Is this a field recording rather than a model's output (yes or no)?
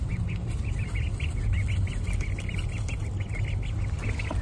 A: yes